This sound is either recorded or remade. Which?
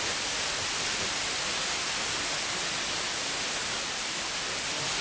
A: recorded